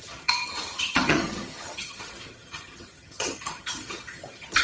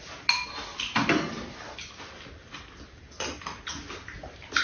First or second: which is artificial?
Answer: first